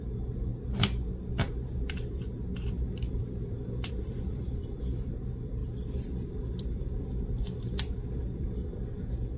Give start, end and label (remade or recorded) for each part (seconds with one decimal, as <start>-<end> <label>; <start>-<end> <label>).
0.0-0.5 remade; 0.5-2.7 recorded; 2.7-9.4 remade